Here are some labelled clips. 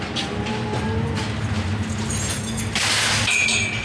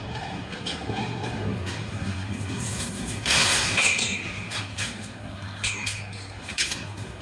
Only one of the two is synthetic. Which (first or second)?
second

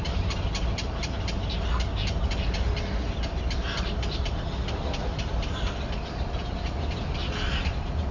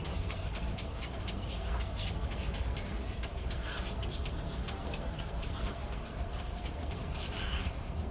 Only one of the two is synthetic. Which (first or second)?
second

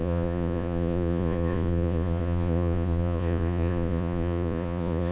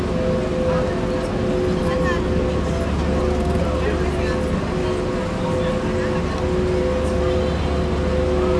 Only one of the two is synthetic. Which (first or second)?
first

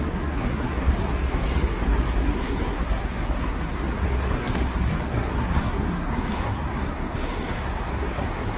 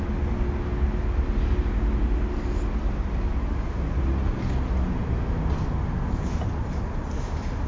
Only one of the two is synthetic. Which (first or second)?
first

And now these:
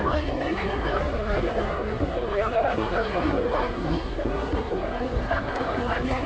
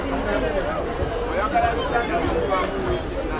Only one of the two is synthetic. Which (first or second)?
first